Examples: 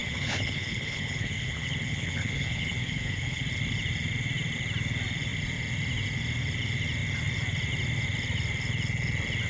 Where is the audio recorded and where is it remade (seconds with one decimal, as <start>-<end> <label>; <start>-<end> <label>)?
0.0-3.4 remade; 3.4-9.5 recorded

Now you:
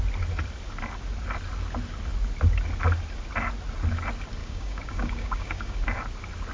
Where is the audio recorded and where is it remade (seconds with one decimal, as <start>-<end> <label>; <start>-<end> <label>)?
0.0-4.4 recorded; 4.4-5.8 remade; 5.8-6.5 recorded

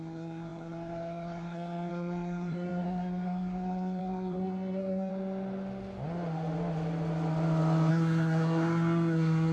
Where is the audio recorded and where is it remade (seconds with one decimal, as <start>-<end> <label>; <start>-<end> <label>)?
0.0-5.1 remade; 5.1-7.9 recorded; 7.9-9.5 remade

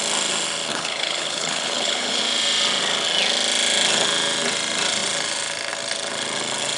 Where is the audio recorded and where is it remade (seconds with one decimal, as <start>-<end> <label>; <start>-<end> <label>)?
0.0-0.7 recorded; 0.7-2.2 remade; 2.2-6.8 recorded

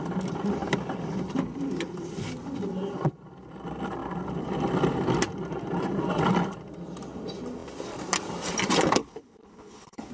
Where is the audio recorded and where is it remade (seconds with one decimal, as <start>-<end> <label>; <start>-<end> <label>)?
0.0-9.0 recorded; 9.0-10.1 remade

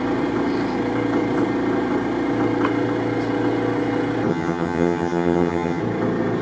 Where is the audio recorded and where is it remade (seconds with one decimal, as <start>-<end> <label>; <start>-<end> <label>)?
0.0-4.3 recorded; 4.3-5.8 remade; 5.8-6.4 recorded

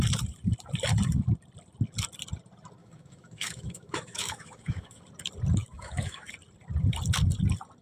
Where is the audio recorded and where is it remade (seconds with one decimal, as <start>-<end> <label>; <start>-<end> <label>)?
0.0-2.8 recorded; 2.8-5.0 remade; 5.0-5.6 recorded; 5.6-6.3 remade; 6.3-7.8 recorded